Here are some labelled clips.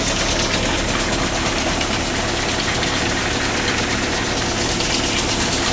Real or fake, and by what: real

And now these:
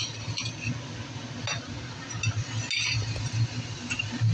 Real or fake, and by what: real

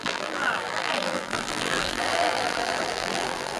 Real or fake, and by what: fake, vocoder, BigVGAN v2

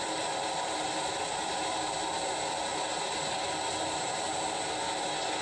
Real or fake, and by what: real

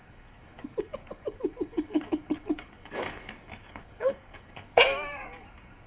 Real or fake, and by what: fake, codec, DAC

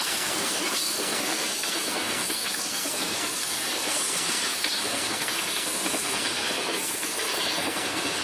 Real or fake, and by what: fake, codec, SNAC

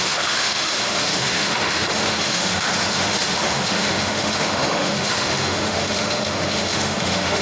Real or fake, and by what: fake, autoencoder, DAC-VAE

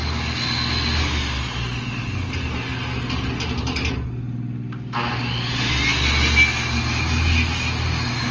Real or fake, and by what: real